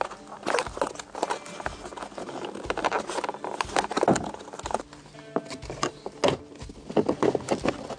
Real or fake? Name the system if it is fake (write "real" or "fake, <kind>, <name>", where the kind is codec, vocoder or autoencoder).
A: real